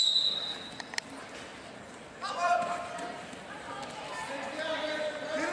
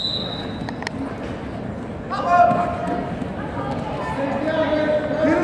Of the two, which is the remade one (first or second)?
first